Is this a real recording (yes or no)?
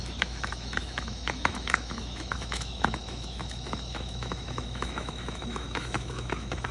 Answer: no